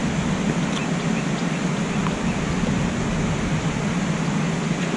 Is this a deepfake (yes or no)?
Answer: no